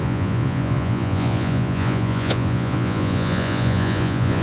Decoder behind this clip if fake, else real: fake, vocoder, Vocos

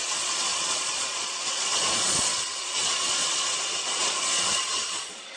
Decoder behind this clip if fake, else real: fake, vocoder, Vocos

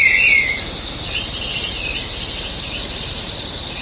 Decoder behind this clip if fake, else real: real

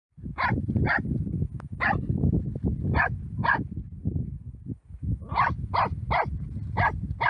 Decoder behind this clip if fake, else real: real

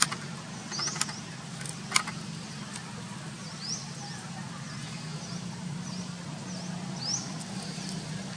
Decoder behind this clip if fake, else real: real